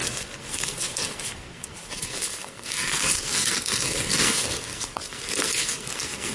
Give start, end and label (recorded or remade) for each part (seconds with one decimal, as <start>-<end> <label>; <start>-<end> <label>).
0.0-6.3 remade